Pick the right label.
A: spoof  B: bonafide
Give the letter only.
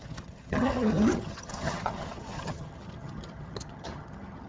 A